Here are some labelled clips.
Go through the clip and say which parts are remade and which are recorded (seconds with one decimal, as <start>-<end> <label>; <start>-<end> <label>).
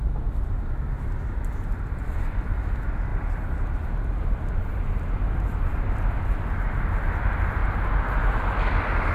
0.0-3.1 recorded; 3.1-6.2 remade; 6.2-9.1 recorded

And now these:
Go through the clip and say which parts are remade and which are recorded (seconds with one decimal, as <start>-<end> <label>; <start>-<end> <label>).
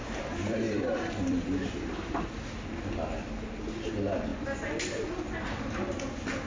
0.0-2.2 remade; 2.2-6.5 recorded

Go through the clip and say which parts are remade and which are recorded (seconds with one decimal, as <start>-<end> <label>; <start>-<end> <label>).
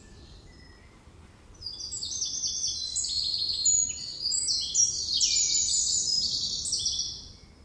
0.0-7.6 recorded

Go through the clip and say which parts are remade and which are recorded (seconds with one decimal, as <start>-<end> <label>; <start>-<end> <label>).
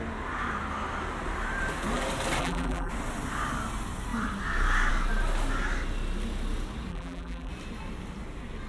0.0-2.4 recorded; 2.4-2.9 remade; 2.9-6.9 recorded; 6.9-7.5 remade; 7.5-8.7 recorded